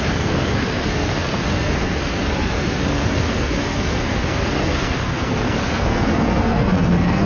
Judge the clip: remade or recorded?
remade